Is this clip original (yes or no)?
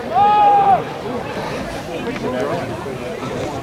yes